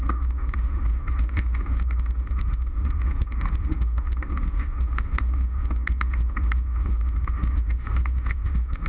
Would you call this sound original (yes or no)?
no